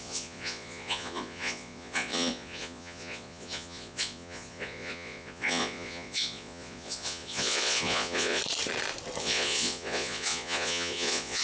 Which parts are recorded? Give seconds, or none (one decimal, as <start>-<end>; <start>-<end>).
8.4-9.2

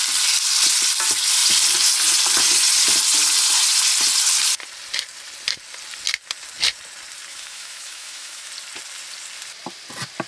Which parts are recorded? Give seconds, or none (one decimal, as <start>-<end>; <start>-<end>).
0.0-7.3; 8.5-10.3

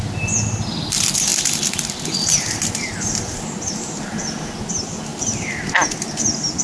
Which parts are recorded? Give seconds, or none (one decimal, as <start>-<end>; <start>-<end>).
0.0-6.6

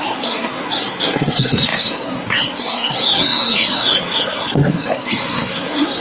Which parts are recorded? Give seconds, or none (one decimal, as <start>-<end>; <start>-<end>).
none